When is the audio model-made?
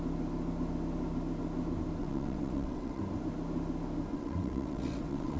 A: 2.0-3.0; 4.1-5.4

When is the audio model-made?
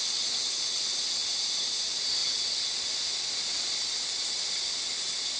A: none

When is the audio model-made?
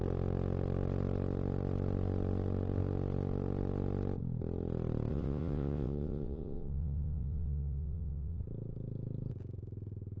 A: 5.1-8.4